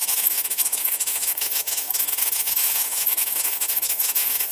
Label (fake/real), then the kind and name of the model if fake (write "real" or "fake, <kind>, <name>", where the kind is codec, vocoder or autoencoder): fake, autoencoder, DAC-VAE